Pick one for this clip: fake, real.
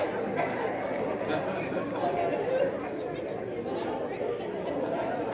real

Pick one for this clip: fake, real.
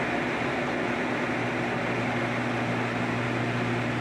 real